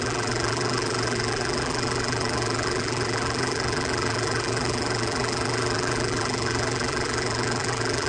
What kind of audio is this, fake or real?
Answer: fake